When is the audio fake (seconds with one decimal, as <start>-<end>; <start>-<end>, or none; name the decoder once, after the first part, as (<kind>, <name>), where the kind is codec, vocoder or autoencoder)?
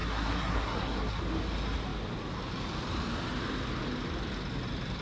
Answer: 0.0-1.2 (codec, SNAC)